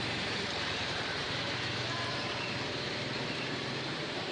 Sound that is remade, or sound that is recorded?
remade